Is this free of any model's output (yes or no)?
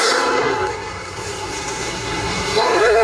no